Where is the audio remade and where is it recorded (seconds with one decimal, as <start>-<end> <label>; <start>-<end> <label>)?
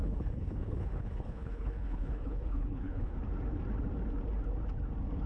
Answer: 0.0-3.2 remade; 3.2-5.3 recorded